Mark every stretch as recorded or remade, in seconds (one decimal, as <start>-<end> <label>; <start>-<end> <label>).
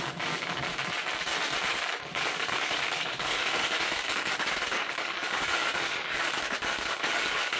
0.0-0.7 remade; 0.7-1.7 recorded; 1.7-7.6 remade